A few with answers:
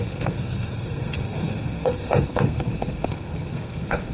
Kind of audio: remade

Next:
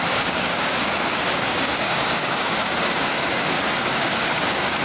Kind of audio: remade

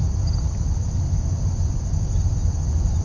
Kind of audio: recorded